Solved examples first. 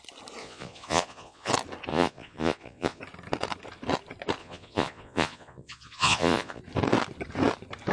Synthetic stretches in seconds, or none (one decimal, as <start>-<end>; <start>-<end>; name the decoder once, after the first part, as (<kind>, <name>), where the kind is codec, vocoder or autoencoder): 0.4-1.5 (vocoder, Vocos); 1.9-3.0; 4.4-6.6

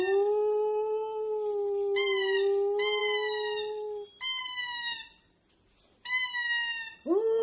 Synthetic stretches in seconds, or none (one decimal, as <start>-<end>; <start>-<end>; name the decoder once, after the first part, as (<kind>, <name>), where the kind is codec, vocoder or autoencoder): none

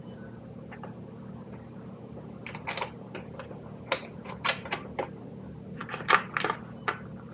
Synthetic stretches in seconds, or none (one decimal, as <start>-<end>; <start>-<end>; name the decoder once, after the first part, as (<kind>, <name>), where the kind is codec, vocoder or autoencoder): none

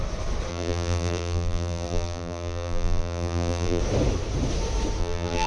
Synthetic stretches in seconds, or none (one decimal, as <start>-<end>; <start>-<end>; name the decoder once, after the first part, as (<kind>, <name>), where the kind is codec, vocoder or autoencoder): 0.5-3.8 (vocoder, BigVGAN v2); 5.0-5.5

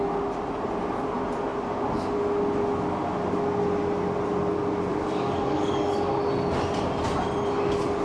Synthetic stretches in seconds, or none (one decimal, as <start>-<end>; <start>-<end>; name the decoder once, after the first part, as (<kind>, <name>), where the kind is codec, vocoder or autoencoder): 4.9-6.1 (codec, DAC)

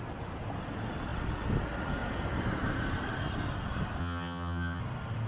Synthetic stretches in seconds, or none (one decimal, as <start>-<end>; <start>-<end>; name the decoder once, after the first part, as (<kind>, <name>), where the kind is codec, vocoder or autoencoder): 4.0-4.8 (vocoder, HiFi-GAN)

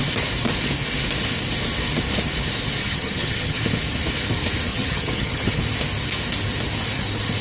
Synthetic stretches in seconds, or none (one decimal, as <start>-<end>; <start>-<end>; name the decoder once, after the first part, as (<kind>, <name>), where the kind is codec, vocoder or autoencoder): 2.8-3.6 (vocoder, HiFi-GAN); 4.7-5.6